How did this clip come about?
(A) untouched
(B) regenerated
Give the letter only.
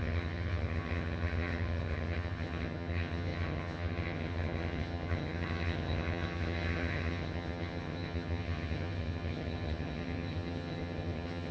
B